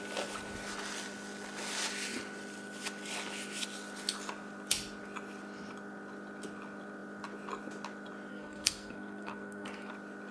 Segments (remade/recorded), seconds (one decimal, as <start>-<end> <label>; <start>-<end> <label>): 0.0-8.3 recorded; 8.3-9.9 remade; 9.9-10.3 recorded